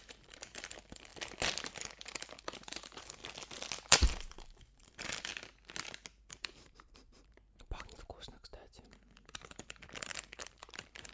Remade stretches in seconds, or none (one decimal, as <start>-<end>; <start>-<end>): 0.0-1.1; 1.7-3.2; 3.9-5.3; 6.2-11.1